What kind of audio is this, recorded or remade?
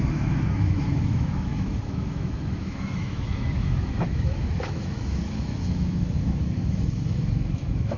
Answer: remade